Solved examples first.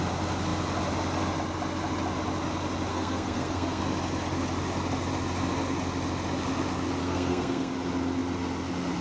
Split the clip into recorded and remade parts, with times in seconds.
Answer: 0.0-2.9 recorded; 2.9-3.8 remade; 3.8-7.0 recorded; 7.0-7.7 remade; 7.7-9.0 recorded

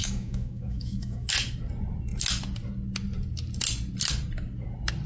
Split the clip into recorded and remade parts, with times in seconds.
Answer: 0.0-1.3 remade; 1.3-5.1 recorded

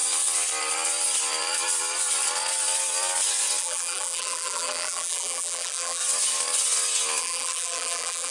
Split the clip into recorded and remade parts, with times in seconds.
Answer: 0.0-3.6 recorded; 3.6-6.0 remade; 6.0-7.2 recorded; 7.2-8.3 remade

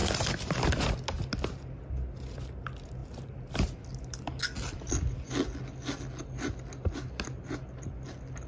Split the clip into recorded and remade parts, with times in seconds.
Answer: 0.0-0.5 remade; 0.5-3.0 recorded; 3.0-3.8 remade; 3.8-8.5 recorded